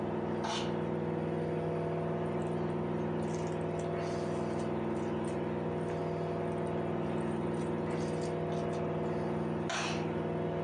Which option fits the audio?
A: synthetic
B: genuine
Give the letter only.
B